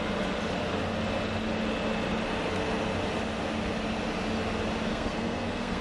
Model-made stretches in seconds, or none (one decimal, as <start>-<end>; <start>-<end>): 4.9-5.8